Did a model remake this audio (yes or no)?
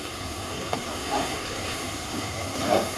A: yes